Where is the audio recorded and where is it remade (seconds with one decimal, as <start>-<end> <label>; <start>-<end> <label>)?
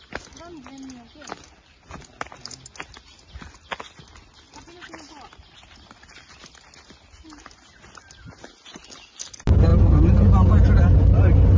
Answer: 0.0-11.6 recorded